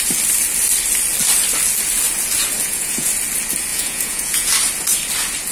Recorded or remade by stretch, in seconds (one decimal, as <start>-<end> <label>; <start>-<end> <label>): 0.0-2.6 recorded; 2.6-3.1 remade; 3.1-3.7 recorded; 3.7-4.5 remade; 4.5-5.5 recorded